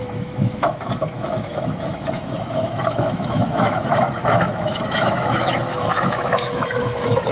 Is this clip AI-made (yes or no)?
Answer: yes